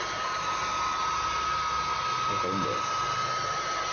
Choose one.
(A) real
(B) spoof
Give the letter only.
A